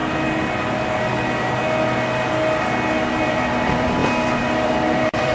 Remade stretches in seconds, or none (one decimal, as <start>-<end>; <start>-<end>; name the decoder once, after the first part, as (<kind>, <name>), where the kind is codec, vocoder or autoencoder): 3.2-5.3 (vocoder, BigVGAN v2)